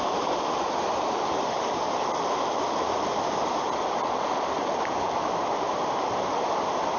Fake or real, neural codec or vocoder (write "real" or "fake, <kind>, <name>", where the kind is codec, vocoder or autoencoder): real